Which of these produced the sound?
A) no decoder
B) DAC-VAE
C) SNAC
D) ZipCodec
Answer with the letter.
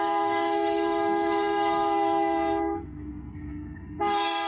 C